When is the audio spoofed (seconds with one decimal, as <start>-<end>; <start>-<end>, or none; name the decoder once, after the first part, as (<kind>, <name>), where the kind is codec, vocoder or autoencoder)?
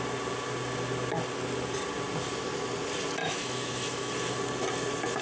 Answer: 3.2-4.1 (autoencoder, DAC-VAE)